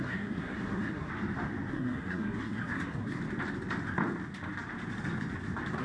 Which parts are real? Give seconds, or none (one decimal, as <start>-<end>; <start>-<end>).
1.1-1.7; 3.2-5.8